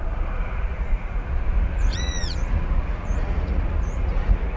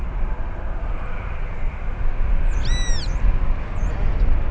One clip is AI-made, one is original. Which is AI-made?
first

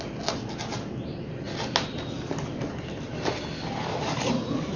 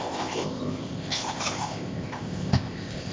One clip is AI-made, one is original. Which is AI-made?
second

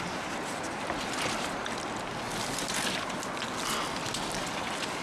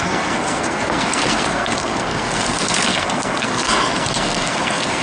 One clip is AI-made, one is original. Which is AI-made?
second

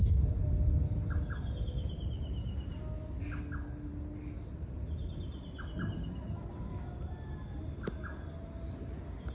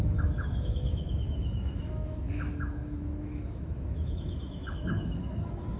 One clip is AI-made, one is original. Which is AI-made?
second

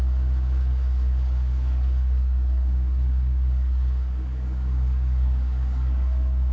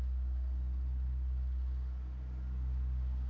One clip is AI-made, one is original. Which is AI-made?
first